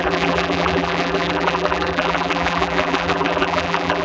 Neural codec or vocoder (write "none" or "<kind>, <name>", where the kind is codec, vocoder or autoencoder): vocoder, BigVGAN v2